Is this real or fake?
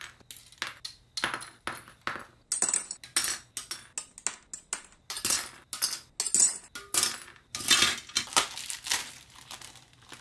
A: real